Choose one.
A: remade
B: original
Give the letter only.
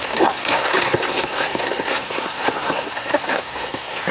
A